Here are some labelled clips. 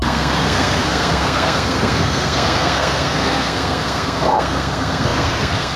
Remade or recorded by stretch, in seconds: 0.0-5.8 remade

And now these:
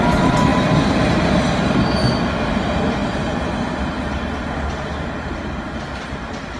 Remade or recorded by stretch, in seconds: 0.0-6.6 recorded

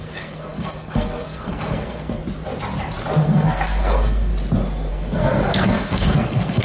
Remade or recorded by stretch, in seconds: 0.0-2.2 remade; 2.2-3.2 recorded; 3.2-4.3 remade; 4.3-4.9 recorded; 4.9-6.6 remade

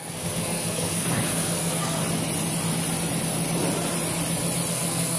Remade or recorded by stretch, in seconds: 0.0-2.0 remade; 2.0-4.7 recorded; 4.7-5.2 remade

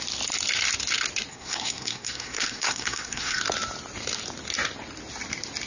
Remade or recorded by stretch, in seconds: 0.0-1.3 recorded; 1.3-3.4 remade; 3.4-5.7 recorded

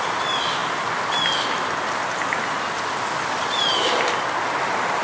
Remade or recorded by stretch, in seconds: 0.0-5.0 recorded